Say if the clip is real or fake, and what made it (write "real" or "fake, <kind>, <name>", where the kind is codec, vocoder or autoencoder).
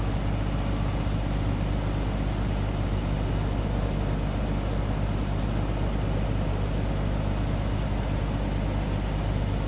real